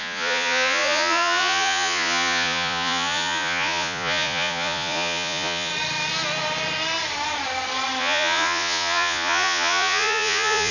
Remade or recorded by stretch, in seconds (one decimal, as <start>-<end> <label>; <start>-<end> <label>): 0.0-5.7 remade; 5.7-8.0 recorded; 8.0-10.7 remade